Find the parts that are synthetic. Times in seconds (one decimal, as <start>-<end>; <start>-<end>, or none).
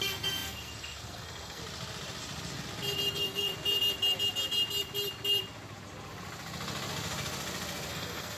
0.0-1.6; 3.1-3.5; 7.9-8.4